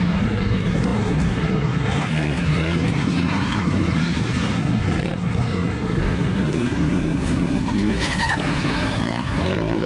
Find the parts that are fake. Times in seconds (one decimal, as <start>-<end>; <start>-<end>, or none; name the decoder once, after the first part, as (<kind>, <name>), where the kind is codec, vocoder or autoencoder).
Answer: 0.0-9.9 (codec, SNAC)